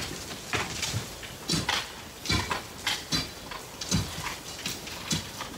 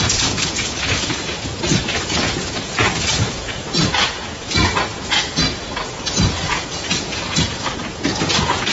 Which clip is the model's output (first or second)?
second